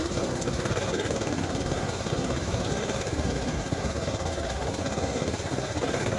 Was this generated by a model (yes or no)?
yes